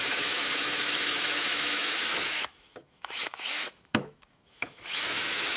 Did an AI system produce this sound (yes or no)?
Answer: yes